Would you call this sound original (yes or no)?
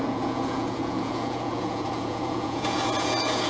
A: no